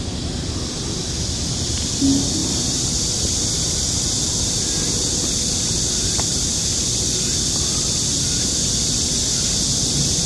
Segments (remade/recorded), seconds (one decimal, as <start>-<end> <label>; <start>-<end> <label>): 0.0-10.3 recorded